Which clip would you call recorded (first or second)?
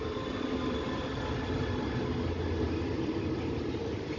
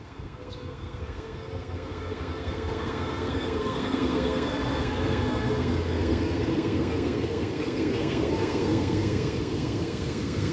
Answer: first